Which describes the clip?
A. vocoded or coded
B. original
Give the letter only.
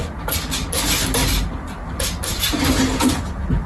B